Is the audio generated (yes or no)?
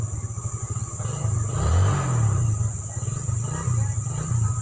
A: no